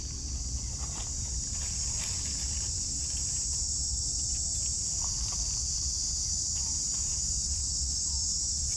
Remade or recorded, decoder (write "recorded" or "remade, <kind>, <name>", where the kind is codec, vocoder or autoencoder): remade, vocoder, BigVGAN v2